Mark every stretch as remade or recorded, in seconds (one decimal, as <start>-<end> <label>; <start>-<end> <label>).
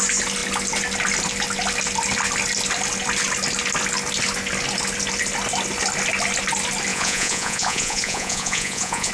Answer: 0.0-6.9 recorded; 6.9-9.1 remade